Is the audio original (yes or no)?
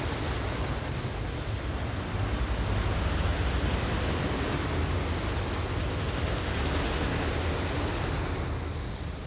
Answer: yes